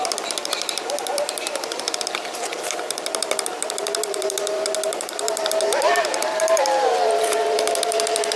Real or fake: fake